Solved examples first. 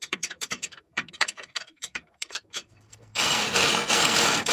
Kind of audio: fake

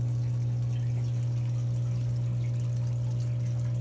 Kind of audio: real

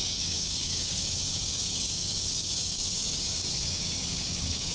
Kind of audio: fake